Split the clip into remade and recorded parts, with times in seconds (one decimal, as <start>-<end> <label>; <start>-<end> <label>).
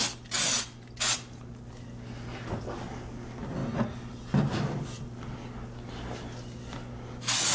0.0-7.5 recorded